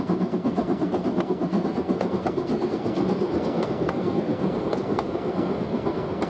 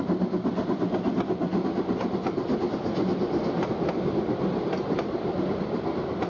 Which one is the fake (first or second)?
first